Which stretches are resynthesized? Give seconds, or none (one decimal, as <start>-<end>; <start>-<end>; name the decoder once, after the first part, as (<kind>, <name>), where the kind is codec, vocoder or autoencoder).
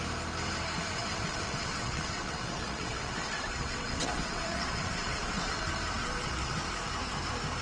1.0-5.6 (vocoder, WaveNeXt); 6.0-6.6